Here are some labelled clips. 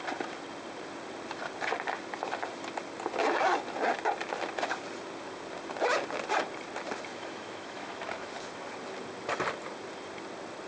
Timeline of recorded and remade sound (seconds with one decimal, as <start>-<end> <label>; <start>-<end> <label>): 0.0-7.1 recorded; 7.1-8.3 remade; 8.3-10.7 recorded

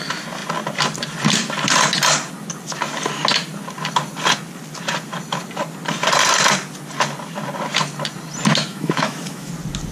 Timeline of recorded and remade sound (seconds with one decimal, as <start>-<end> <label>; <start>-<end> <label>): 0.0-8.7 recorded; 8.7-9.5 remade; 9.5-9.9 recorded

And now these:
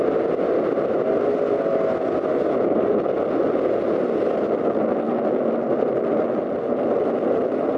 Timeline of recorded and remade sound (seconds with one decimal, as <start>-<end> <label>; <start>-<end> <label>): 0.0-7.8 recorded